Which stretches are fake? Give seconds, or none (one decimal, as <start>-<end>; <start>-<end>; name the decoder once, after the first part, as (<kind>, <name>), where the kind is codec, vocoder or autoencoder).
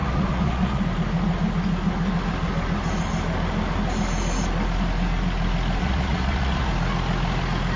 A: 0.0-0.8 (vocoder, Vocos); 5.8-6.7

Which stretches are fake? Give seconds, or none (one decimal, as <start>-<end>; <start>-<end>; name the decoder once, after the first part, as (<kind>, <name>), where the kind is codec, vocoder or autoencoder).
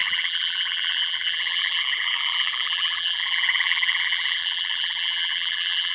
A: 0.0-5.9 (vocoder, BigVGAN v2)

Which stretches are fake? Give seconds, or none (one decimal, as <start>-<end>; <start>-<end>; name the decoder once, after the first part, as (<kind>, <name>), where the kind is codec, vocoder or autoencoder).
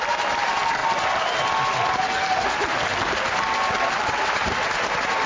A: none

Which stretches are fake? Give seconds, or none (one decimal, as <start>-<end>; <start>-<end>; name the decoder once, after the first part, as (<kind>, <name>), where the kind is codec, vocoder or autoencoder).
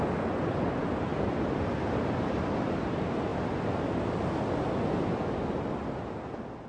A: none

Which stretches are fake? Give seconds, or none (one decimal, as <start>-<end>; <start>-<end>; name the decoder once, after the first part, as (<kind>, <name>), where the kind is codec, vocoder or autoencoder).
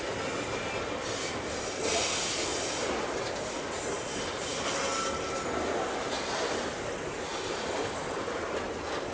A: none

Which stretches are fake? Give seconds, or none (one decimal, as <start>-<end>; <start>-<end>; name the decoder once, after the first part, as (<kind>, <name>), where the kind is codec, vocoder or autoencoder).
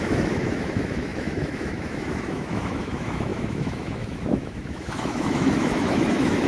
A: 0.0-6.5 (autoencoder, DAC-VAE)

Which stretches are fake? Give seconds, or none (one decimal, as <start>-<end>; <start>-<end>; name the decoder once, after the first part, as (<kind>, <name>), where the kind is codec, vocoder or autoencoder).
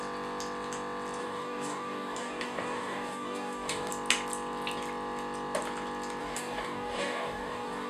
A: 1.2-3.9 (codec, DAC); 6.2-7.9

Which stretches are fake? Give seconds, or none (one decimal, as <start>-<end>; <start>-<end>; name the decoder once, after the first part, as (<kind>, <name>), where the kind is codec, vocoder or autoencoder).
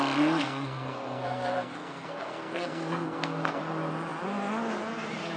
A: 0.4-3.6 (codec, SNAC)